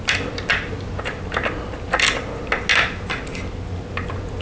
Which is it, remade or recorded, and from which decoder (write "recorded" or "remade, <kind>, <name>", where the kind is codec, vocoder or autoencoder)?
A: recorded